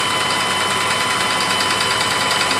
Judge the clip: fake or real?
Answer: real